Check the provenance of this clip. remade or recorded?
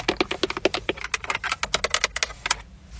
recorded